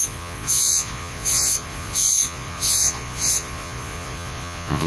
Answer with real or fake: fake